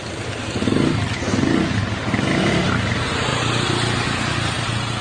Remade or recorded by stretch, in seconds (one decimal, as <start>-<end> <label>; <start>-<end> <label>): 0.0-5.0 recorded